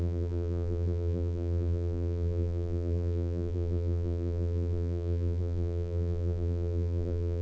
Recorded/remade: remade